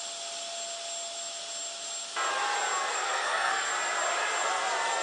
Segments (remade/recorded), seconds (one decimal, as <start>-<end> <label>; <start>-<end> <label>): 0.0-2.9 recorded; 2.9-3.7 remade; 3.7-5.0 recorded